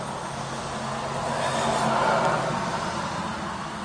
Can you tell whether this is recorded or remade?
recorded